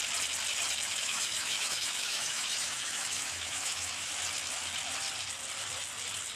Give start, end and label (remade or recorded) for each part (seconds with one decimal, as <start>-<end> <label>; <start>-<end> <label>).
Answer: 0.0-0.9 recorded; 0.9-4.1 remade; 4.1-6.4 recorded